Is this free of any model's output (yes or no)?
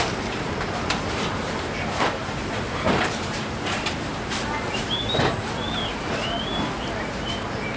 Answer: no